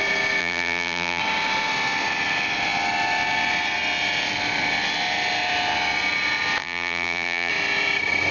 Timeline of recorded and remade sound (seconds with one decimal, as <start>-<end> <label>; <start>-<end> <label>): 0.0-0.4 recorded; 0.4-1.2 remade; 1.2-6.6 recorded; 6.6-7.5 remade; 7.5-8.3 recorded